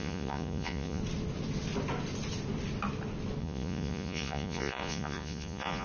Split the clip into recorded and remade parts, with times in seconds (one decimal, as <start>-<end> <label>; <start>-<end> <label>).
0.0-1.0 remade; 1.0-3.4 recorded; 3.4-5.8 remade

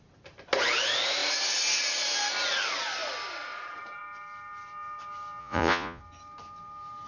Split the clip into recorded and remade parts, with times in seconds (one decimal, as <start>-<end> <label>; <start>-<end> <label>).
0.0-5.4 recorded; 5.4-6.0 remade; 6.0-7.1 recorded

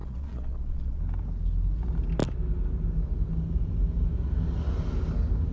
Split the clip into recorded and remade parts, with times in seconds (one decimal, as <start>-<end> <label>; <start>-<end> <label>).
0.0-1.0 remade; 1.0-5.5 recorded

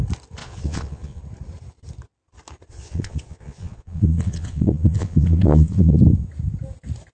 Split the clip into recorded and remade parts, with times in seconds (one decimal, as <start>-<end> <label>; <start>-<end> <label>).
0.0-0.4 recorded; 0.4-1.2 remade; 1.2-2.7 recorded; 2.7-6.0 remade; 6.0-7.1 recorded

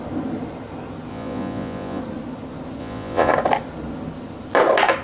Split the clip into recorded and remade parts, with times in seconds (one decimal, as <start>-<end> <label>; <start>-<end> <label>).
0.0-1.1 recorded; 1.1-2.0 remade; 2.0-2.8 recorded; 2.8-3.3 remade; 3.3-5.0 recorded

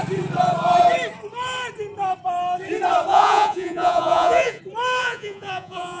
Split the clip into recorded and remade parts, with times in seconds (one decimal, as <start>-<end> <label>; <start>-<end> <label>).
0.0-3.1 recorded; 3.1-4.6 remade; 4.6-5.0 recorded; 5.0-6.0 remade

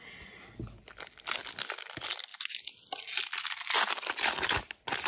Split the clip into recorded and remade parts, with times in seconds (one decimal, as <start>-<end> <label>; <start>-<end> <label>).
0.0-5.1 recorded